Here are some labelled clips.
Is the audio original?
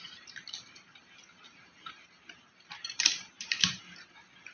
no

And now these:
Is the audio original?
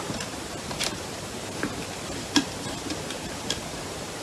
no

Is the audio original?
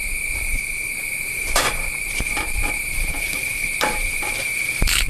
no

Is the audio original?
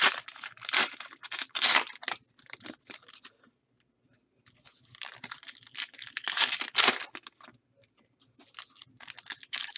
no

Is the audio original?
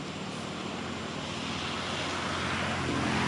yes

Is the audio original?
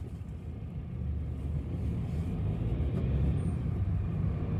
yes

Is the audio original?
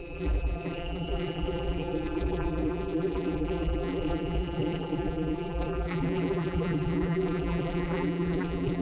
no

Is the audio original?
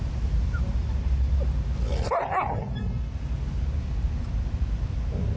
yes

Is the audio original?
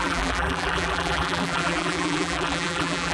no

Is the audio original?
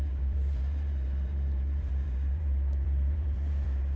no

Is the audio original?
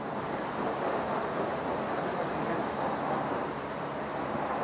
no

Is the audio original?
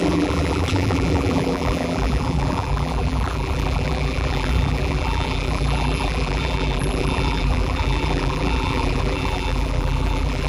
no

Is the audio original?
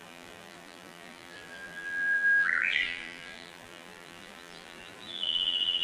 no